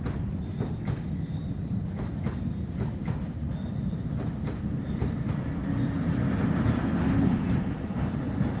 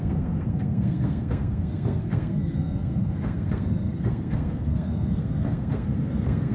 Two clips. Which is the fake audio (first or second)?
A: second